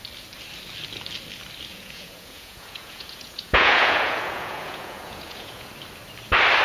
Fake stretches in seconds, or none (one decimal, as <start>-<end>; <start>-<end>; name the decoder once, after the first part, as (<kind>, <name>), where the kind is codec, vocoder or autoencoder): 1.7-5.7 (vocoder, Vocos)